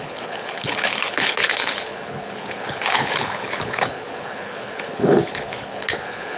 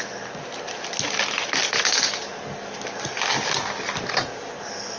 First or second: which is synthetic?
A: first